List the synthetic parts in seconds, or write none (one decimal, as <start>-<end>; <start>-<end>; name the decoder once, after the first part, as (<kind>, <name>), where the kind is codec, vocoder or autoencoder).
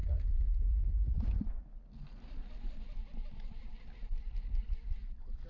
0.0-1.6 (vocoder, Vocos)